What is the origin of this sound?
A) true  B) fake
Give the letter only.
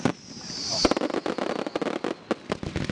A